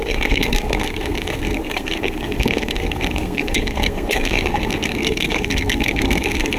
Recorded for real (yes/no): no